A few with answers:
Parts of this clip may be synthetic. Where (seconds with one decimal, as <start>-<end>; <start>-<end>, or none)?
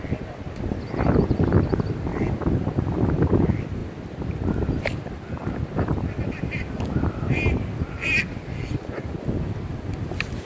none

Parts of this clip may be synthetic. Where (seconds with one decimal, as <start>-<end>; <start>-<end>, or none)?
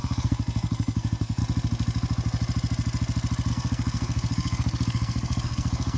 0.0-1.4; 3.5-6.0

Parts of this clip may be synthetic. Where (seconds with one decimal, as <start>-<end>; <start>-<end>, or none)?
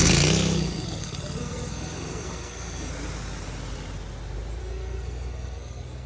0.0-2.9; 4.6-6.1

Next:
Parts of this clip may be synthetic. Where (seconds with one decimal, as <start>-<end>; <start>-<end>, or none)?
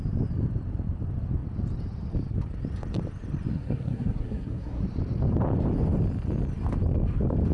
3.5-4.8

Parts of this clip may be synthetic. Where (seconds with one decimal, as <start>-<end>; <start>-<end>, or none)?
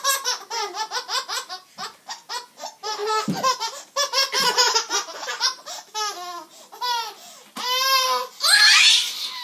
none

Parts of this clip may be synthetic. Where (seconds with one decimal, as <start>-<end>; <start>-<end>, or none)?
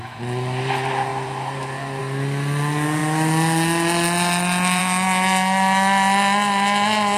none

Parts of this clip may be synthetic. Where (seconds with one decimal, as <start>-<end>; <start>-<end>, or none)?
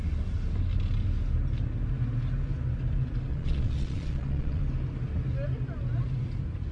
3.3-4.6